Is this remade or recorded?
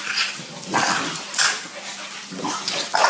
recorded